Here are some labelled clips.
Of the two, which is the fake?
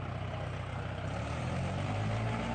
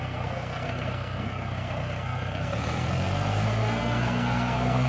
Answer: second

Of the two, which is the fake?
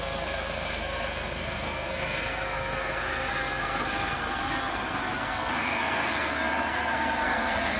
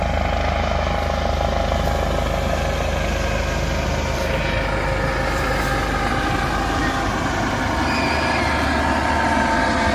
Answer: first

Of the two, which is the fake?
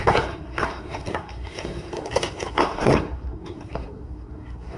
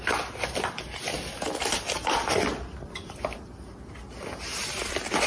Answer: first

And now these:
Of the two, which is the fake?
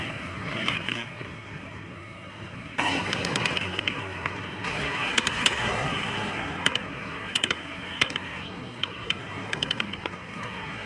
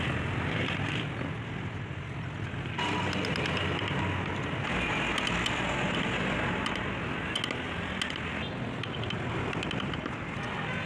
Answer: first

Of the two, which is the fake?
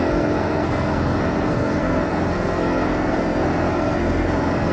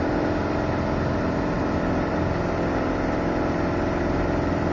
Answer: first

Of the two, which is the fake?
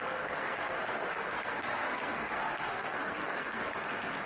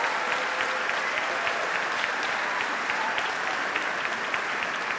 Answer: first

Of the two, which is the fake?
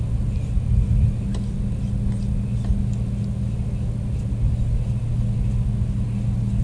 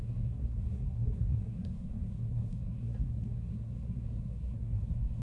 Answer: second